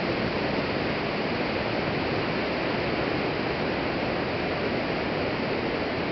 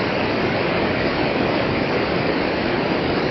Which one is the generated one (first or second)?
second